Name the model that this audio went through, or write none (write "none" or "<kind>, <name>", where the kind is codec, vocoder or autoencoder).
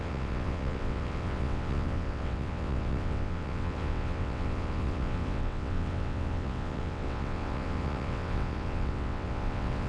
vocoder, WaveNeXt